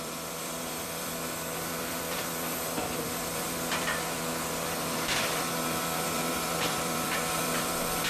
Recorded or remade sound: remade